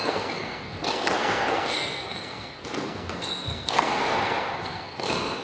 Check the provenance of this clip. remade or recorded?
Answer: remade